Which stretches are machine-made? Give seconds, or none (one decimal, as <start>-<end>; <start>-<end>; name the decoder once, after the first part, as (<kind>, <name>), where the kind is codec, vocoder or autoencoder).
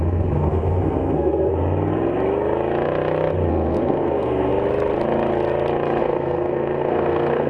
0.0-1.5 (codec, SNAC); 3.5-4.5; 6.0-7.5